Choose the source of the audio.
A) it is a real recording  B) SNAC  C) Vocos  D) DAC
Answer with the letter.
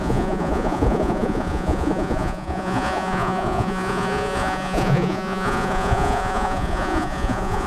C